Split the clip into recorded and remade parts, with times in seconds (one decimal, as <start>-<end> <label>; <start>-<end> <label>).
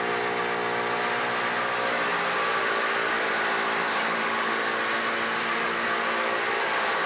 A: 0.0-2.6 recorded; 2.6-3.3 remade; 3.3-3.8 recorded; 3.8-4.8 remade; 4.8-5.5 recorded; 5.5-7.1 remade